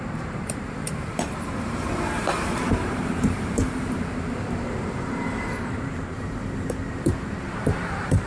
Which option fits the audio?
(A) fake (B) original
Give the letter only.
A